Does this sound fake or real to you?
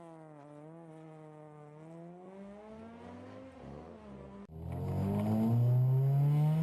real